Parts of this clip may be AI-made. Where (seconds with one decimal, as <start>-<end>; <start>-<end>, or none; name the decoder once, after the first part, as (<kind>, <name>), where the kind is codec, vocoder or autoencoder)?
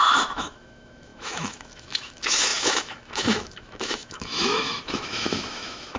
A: 0.0-6.0 (autoencoder, DAC-VAE)